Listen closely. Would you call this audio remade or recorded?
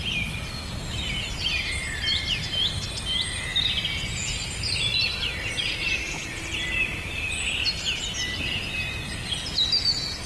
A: recorded